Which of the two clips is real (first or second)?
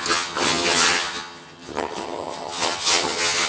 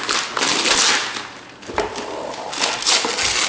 second